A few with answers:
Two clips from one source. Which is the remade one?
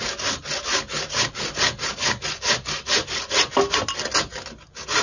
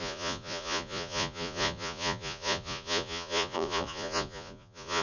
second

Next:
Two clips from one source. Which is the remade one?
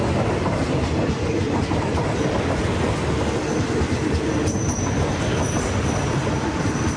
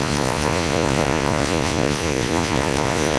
second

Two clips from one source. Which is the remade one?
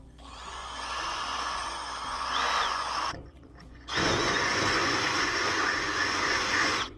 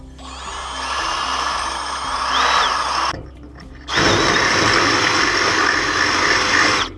first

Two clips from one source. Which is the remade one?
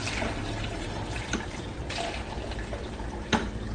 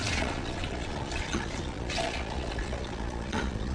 second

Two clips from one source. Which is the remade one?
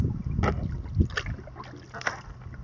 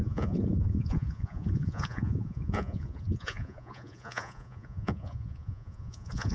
second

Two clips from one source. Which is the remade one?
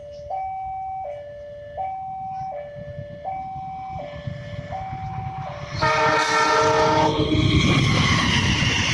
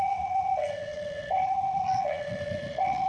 second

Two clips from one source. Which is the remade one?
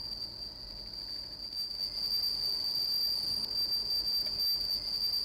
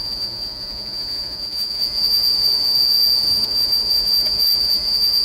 second